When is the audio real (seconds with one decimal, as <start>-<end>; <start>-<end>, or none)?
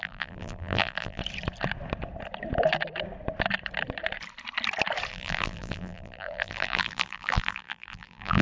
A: 1.2-5.1